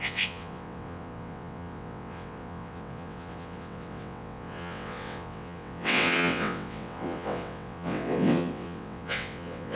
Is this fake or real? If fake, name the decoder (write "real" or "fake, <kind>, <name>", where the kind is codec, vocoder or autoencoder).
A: fake, vocoder, WaveNeXt